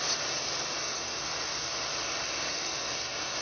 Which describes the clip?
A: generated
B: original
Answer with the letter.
B